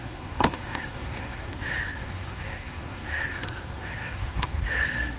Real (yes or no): no